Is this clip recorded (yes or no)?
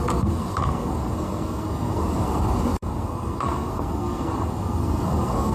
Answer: no